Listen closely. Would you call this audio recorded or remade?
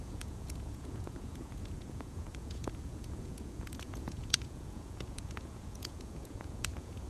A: remade